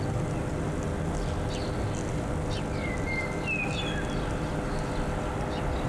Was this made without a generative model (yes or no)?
yes